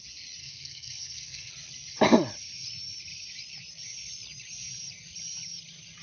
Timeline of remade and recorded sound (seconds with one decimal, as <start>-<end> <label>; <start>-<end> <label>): 0.0-0.4 recorded; 0.4-1.5 remade; 1.5-6.0 recorded